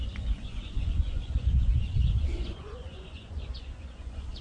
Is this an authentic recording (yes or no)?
no